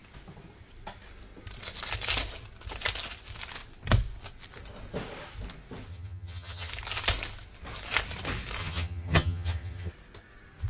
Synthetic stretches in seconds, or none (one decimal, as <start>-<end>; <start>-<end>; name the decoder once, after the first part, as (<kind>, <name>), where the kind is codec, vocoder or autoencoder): 5.9-6.7 (vocoder, HiFi-GAN); 8.6-9.9